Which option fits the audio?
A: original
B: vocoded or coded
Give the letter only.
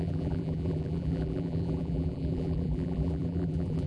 B